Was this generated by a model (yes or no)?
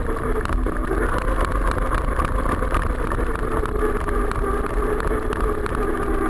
no